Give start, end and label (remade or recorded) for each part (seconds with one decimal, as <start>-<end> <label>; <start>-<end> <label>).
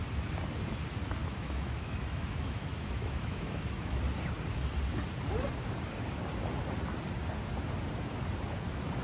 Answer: 0.0-1.2 recorded; 1.2-4.0 remade; 4.0-9.0 recorded